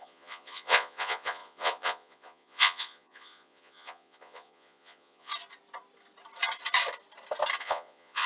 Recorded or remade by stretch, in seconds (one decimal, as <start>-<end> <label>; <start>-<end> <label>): 0.0-5.3 remade; 5.3-7.6 recorded; 7.6-8.3 remade